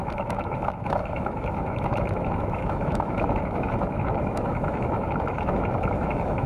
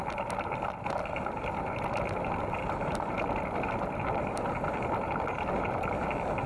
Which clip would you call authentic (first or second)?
second